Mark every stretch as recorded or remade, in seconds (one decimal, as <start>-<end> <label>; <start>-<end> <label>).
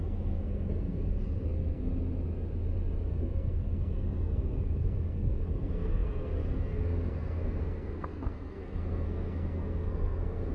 0.0-1.9 remade; 1.9-3.1 recorded; 3.1-10.5 remade